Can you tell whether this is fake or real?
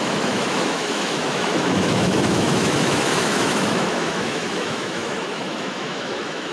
fake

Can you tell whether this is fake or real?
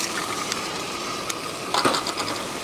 real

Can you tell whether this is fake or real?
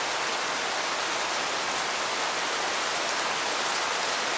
real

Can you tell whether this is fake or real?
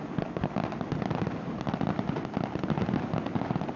real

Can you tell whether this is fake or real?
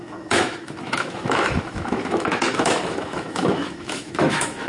fake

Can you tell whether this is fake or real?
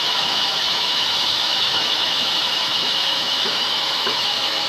fake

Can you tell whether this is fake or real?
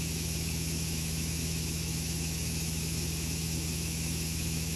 fake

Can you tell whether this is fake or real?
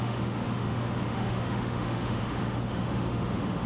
fake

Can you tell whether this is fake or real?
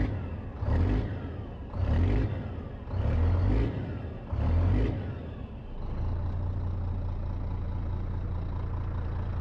real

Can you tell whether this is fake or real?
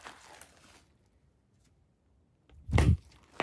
real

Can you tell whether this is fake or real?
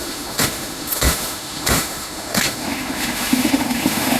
fake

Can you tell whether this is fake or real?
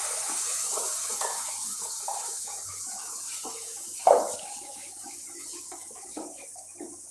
fake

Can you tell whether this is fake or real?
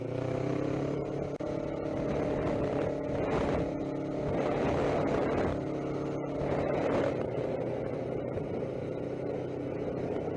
real